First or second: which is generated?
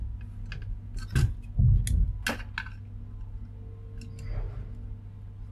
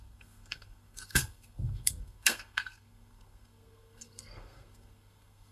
second